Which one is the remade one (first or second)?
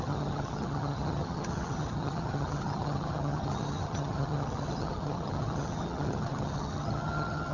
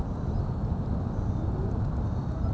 first